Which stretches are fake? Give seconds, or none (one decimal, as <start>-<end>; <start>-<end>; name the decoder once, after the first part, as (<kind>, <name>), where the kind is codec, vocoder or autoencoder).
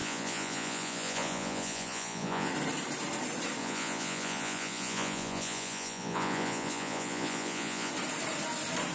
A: 0.0-2.5 (vocoder, Vocos); 3.6-7.9